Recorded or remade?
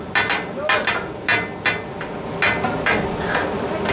recorded